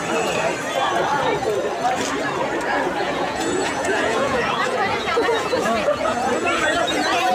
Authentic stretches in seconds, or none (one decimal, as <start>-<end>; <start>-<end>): 0.0-3.0